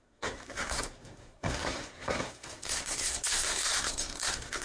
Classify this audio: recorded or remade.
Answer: remade